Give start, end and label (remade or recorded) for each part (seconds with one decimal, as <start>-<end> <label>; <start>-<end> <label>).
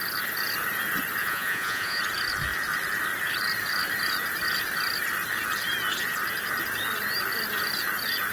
0.0-1.2 recorded; 1.2-2.0 remade; 2.0-8.3 recorded